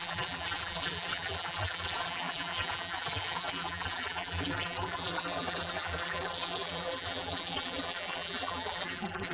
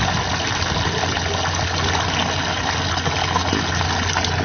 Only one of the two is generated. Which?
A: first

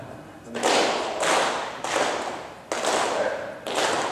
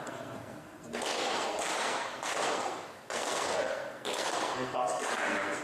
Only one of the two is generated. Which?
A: second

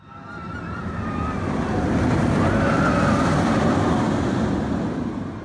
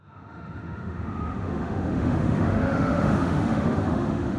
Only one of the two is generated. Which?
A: second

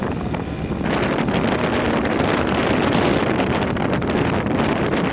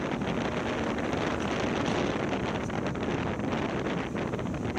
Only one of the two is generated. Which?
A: first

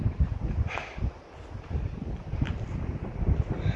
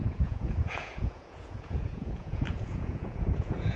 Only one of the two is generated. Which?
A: second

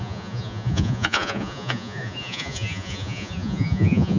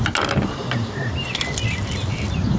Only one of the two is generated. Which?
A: first